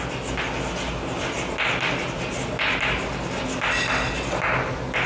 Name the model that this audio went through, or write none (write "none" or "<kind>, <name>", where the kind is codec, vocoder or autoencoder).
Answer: none